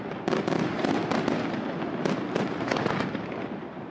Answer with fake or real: real